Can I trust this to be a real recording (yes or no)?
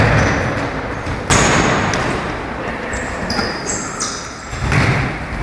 yes